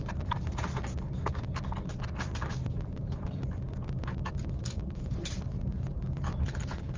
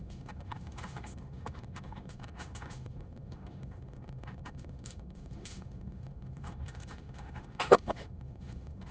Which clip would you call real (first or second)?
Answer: first